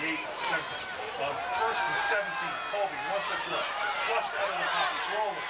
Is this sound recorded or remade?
recorded